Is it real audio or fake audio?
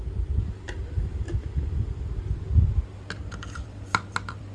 fake